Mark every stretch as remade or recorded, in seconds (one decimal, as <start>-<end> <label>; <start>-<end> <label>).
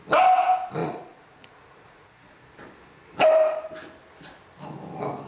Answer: 0.0-0.8 recorded; 0.8-2.3 remade; 2.3-5.3 recorded